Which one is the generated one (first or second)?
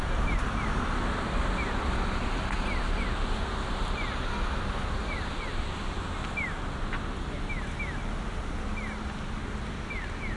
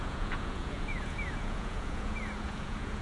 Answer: second